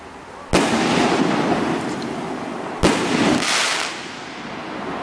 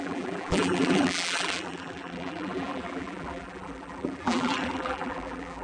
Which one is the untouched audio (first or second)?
first